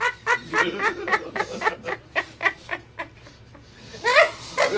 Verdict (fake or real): real